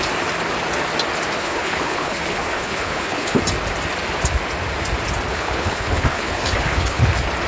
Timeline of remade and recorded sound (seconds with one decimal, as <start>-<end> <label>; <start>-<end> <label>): 0.0-1.4 recorded; 1.4-3.4 remade; 3.4-5.3 recorded; 5.3-7.0 remade; 7.0-7.5 recorded